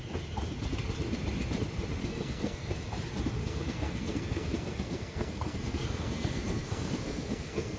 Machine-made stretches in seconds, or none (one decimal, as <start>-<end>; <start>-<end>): 2.0-2.7; 3.4-7.8